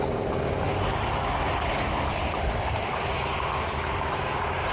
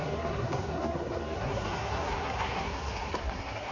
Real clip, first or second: first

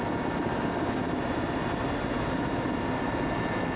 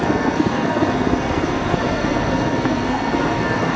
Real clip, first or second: first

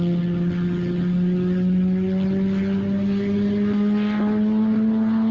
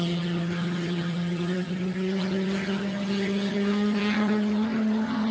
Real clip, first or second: first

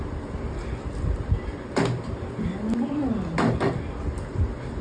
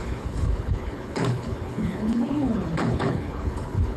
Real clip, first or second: first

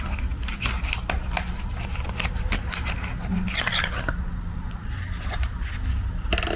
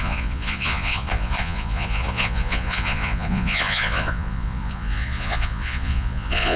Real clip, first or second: first